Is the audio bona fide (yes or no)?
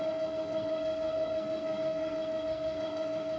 no